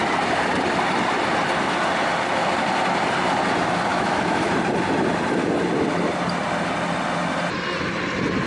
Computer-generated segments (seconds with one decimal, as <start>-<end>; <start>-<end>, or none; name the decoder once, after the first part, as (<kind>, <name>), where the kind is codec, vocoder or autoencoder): 3.9-4.5 (autoencoder, DAC-VAE)